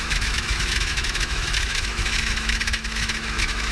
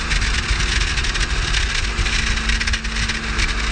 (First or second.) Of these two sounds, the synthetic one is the first